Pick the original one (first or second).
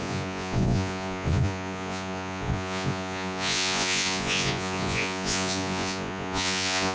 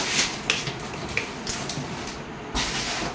second